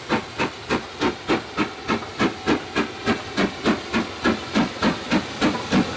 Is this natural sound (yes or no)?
yes